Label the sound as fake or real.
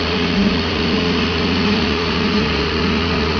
fake